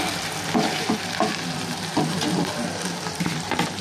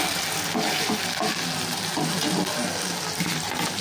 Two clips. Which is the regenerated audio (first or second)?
first